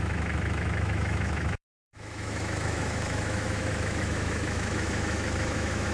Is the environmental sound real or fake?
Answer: fake